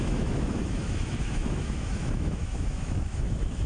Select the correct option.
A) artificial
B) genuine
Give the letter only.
A